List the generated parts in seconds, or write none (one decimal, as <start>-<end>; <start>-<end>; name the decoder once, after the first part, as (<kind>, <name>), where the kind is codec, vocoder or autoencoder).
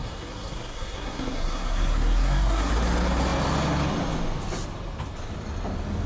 0.0-2.7 (codec, SNAC)